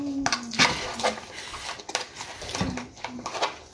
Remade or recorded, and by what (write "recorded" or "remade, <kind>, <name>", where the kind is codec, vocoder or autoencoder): recorded